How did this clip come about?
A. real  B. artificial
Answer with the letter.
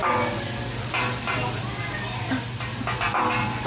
A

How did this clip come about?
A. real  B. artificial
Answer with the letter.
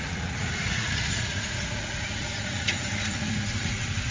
B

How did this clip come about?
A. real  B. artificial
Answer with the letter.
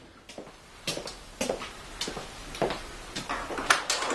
A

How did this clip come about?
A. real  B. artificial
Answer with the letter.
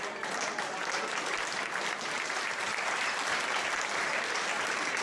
A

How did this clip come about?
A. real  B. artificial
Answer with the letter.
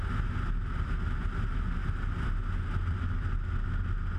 A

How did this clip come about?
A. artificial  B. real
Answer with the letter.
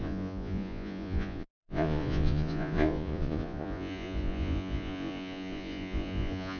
A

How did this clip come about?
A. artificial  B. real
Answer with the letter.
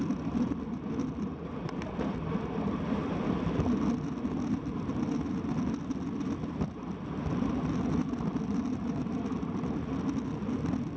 B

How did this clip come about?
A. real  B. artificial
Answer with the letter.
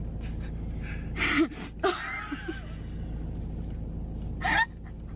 A